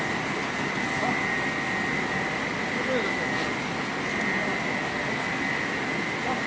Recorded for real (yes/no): yes